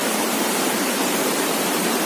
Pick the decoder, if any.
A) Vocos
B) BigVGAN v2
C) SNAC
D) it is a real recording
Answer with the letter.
B